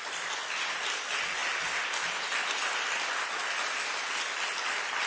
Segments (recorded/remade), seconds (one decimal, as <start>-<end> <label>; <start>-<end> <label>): 0.0-1.4 recorded; 1.4-3.0 remade; 3.0-5.1 recorded